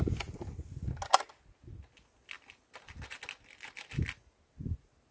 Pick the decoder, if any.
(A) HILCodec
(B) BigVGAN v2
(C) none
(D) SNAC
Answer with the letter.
C